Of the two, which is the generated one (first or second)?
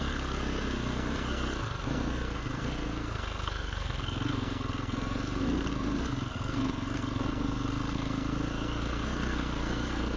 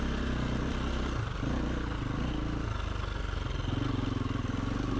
first